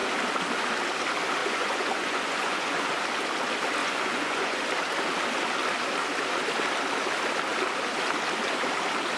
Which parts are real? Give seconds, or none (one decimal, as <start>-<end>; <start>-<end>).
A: 0.0-1.4; 3.0-3.8; 4.6-9.2